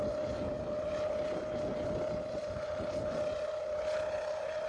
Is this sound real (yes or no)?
yes